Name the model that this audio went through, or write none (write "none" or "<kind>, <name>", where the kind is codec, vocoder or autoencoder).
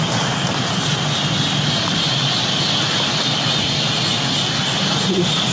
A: none